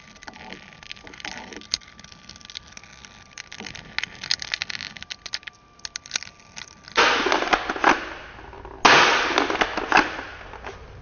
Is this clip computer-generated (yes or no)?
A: no